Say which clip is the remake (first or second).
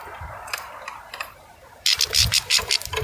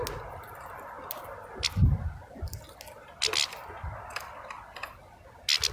first